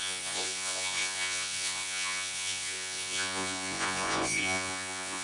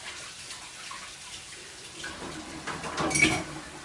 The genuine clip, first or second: second